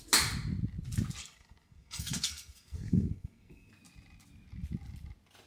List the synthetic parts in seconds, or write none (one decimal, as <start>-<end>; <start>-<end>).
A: 1.2-3.7